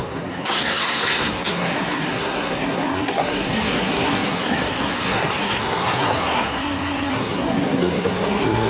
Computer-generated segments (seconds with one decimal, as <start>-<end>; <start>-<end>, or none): 0.0-8.7